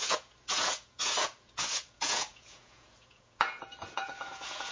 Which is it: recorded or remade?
remade